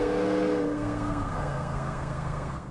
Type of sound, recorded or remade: remade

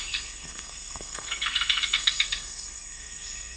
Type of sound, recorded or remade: remade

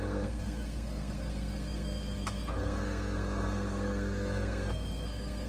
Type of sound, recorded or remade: remade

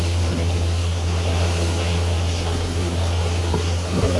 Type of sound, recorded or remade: remade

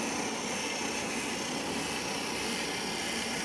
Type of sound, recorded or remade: recorded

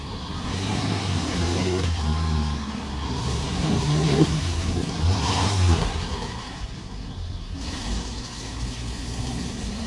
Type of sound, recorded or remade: remade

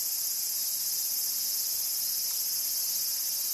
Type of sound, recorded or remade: recorded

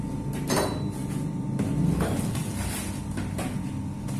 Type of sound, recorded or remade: recorded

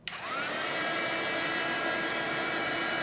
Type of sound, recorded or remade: recorded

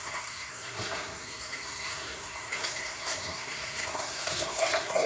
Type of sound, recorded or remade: remade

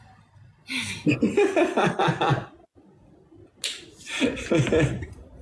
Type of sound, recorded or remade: recorded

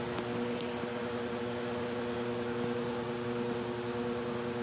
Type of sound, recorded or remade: recorded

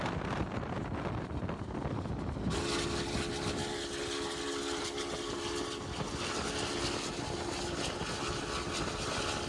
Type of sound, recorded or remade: recorded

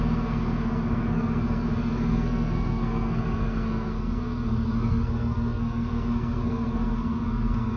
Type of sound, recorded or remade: remade